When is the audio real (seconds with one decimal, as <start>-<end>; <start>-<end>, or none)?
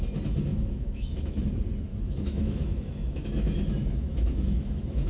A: 0.0-0.5; 1.4-1.9